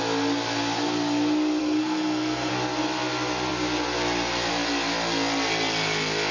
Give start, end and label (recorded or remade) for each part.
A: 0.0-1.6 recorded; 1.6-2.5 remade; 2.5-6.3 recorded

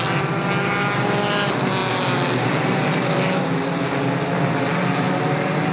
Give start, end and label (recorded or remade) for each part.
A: 0.0-5.7 recorded